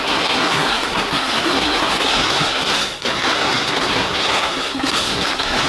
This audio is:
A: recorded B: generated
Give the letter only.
B